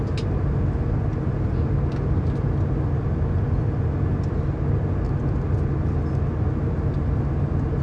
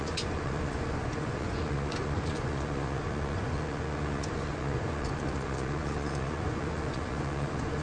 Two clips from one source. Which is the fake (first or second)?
second